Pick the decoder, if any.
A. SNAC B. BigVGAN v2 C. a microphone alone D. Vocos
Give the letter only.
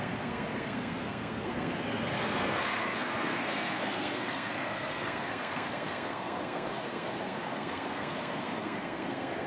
A